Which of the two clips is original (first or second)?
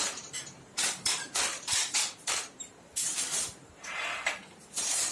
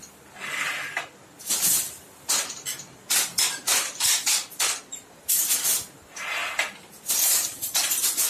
second